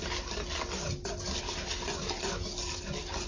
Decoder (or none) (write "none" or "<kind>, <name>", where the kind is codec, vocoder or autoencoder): none